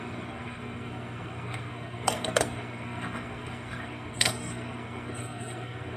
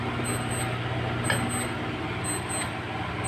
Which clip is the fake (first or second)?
first